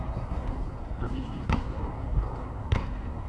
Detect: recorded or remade remade